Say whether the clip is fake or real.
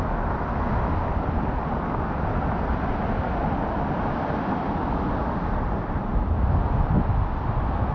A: real